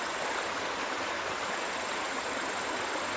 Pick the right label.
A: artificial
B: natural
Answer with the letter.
B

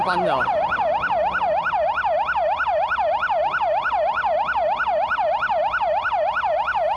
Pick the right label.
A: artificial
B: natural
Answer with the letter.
B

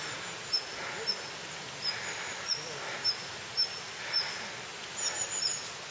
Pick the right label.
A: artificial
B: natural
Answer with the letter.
B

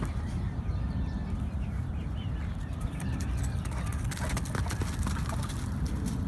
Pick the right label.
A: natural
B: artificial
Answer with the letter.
A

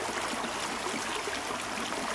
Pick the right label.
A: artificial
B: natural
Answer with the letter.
B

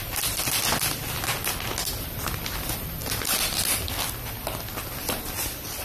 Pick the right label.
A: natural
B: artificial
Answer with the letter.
A